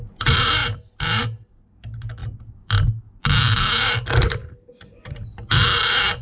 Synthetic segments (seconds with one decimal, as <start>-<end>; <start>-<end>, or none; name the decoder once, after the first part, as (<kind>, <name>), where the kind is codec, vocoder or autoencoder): none